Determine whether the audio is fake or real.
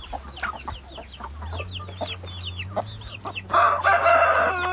real